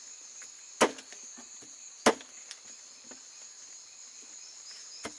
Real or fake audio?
real